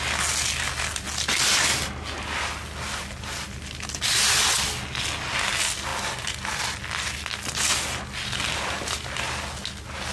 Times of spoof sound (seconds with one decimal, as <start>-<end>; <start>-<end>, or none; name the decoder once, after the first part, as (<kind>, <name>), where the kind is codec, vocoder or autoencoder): none